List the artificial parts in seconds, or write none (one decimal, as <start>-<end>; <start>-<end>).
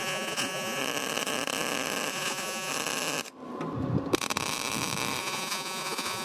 0.0-0.8; 2.1-2.7; 5.2-6.2